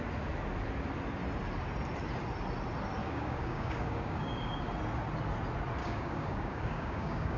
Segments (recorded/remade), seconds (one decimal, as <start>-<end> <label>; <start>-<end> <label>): 0.0-3.0 recorded; 3.0-4.7 remade; 4.7-5.8 recorded; 5.8-7.4 remade